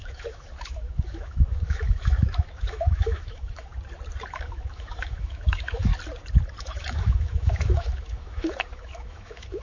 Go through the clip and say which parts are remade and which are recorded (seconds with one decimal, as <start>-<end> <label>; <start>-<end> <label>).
0.0-3.7 remade; 3.7-4.3 recorded; 4.3-5.9 remade; 5.9-6.6 recorded; 6.6-9.6 remade